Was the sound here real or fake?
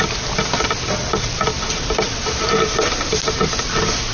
real